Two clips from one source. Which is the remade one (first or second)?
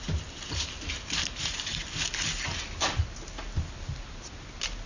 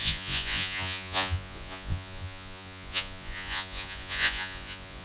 second